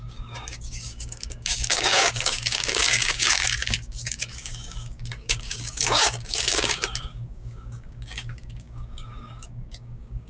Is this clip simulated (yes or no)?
yes